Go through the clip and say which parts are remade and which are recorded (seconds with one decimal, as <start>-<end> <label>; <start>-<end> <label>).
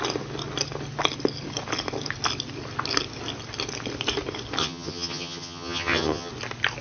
0.0-4.6 recorded; 4.6-6.3 remade; 6.3-6.8 recorded